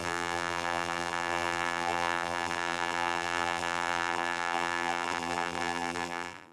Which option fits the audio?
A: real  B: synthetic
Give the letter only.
B